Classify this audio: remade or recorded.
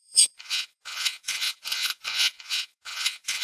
remade